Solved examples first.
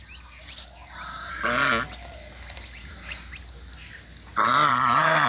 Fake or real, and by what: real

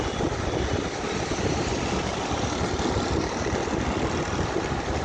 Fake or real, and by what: real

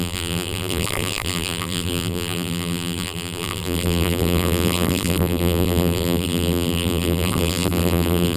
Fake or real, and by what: fake, vocoder, BigVGAN v2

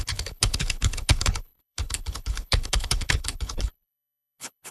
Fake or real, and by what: fake, codec, HILCodec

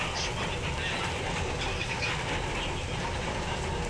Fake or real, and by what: real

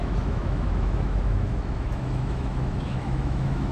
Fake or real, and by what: fake, autoencoder, DAC-VAE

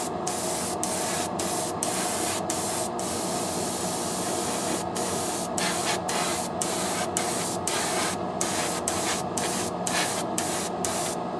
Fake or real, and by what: real